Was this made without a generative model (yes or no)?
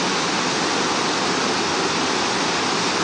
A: yes